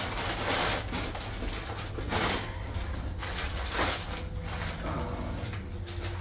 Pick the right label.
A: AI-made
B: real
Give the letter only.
B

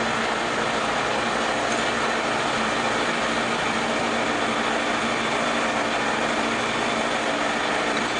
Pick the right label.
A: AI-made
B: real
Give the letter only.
B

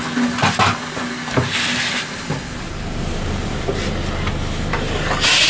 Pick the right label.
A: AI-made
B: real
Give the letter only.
B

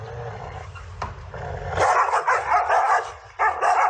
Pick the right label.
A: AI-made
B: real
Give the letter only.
B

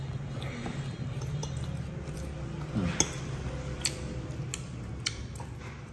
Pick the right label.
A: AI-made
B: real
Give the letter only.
B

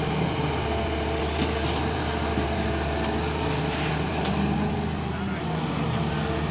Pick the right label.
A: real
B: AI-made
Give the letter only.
A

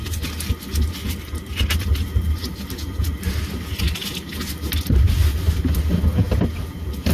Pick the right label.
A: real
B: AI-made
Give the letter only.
A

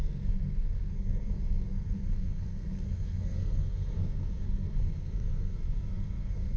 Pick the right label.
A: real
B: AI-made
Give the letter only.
B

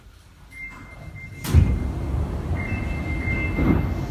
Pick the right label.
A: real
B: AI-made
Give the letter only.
A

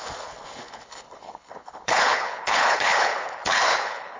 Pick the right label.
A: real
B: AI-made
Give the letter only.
B